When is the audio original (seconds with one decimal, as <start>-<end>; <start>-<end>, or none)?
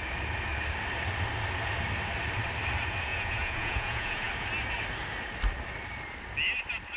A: 0.0-3.1; 4.3-7.0